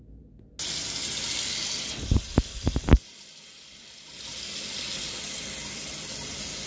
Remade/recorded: recorded